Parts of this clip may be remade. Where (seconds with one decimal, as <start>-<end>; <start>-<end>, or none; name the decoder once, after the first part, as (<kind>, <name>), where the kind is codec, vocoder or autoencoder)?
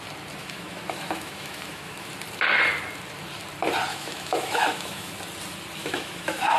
0.4-2.1 (autoencoder, DAC-VAE); 3.9-5.1; 5.8-6.6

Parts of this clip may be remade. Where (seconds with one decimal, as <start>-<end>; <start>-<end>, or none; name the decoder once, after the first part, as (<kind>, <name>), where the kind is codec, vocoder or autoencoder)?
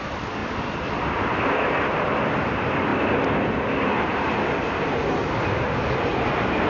none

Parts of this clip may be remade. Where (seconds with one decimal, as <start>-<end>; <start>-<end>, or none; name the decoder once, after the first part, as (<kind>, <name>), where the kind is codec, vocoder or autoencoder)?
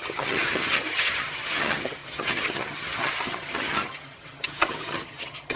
0.0-5.6 (vocoder, HiFi-GAN)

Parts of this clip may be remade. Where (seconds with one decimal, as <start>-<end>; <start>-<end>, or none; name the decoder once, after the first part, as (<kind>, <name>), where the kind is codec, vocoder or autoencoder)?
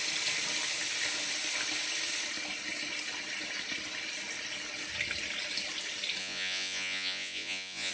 6.2-7.9 (vocoder, Vocos)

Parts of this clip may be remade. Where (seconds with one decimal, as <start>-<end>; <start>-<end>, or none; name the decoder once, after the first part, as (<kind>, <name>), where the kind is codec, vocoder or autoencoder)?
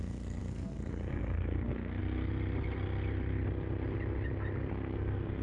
0.0-2.0 (codec, SNAC); 4.7-5.4